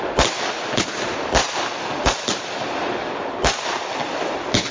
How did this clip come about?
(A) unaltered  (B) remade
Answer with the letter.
A